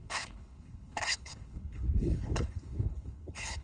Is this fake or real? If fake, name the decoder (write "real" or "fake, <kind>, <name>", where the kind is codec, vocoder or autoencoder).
fake, codec, HILCodec